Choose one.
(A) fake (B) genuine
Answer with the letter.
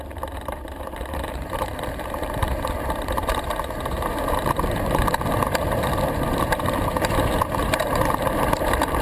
A